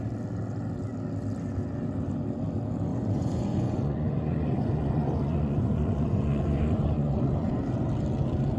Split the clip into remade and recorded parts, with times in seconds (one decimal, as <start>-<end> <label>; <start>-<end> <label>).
0.0-2.9 recorded; 2.9-7.5 remade; 7.5-8.6 recorded